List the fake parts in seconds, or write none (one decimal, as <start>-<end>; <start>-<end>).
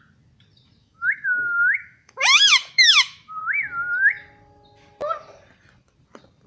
0.8-3.4